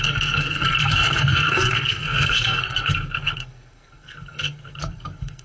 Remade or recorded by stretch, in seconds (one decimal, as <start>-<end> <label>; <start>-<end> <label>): 0.0-5.4 remade